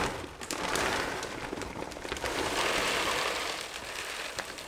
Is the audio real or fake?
fake